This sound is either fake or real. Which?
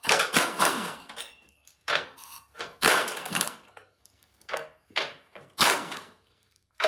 fake